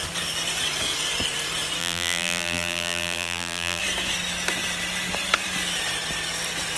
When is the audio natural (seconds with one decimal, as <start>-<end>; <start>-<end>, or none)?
0.0-1.8; 3.8-6.8